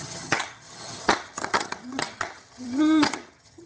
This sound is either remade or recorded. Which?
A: remade